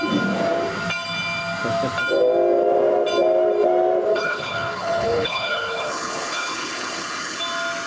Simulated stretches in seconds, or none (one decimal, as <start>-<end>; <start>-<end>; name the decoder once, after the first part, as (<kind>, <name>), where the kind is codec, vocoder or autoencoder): 4.1-7.4 (codec, HILCodec)